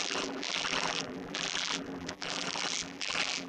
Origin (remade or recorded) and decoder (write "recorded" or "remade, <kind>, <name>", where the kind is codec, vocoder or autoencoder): remade, vocoder, BigVGAN v2